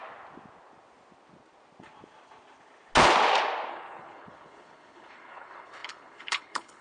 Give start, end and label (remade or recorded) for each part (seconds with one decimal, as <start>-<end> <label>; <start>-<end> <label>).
0.0-3.7 recorded; 3.7-6.8 remade